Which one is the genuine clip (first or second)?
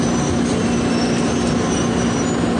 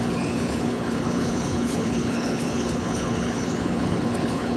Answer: first